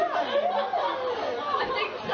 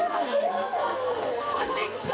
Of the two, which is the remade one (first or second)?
second